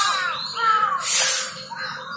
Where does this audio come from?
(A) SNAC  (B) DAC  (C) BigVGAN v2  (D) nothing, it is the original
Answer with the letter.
D